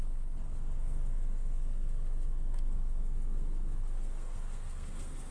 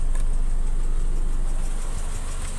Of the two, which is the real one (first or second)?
second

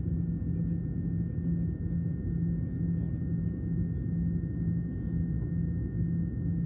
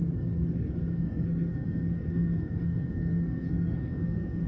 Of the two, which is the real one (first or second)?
first